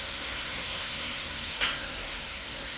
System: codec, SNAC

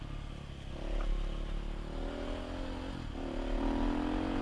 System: none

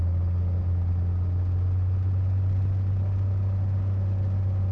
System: none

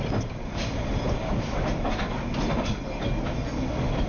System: none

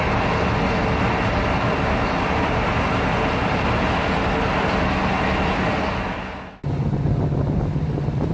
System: none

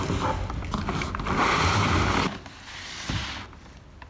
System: none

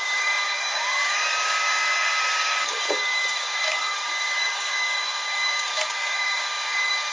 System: codec, DAC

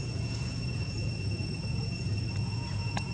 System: vocoder, Vocos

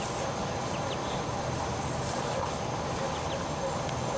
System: none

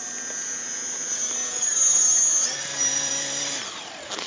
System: vocoder, BigVGAN v2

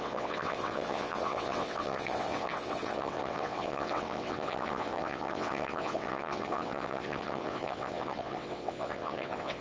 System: vocoder, WaveNeXt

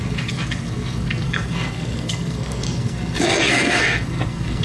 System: codec, SNAC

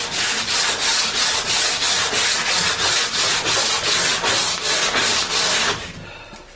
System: none